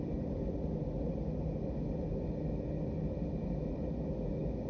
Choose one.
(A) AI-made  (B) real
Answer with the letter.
B